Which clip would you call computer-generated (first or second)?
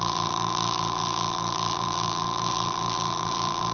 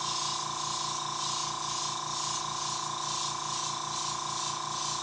first